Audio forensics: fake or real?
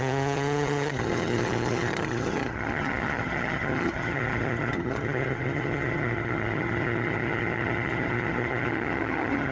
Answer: fake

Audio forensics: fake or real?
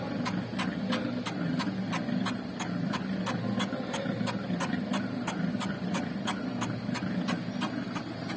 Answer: real